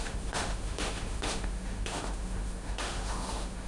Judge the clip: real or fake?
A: fake